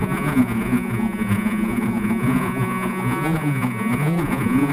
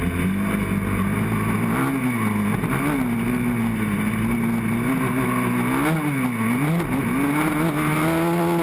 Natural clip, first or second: second